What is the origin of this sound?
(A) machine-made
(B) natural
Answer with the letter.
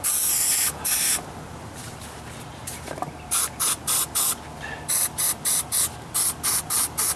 A